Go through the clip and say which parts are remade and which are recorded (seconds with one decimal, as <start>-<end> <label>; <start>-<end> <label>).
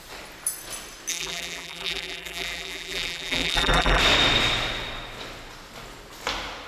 0.0-1.1 recorded; 1.1-4.0 remade; 4.0-6.7 recorded